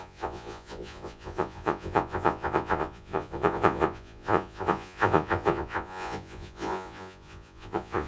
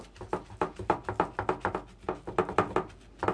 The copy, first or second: first